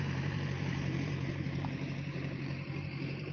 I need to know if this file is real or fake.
fake